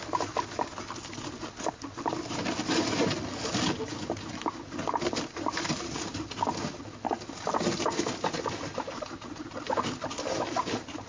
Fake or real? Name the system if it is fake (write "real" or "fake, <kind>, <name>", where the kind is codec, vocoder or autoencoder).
real